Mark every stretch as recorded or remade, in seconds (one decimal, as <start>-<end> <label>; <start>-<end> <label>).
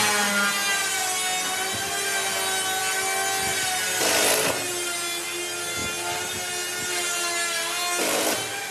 0.0-8.7 recorded